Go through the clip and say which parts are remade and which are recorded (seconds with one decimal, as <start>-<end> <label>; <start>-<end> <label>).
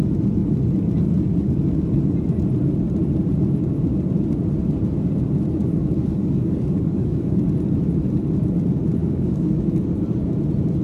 0.0-5.6 recorded; 5.6-7.4 remade; 7.4-9.0 recorded; 9.0-9.8 remade; 9.8-10.8 recorded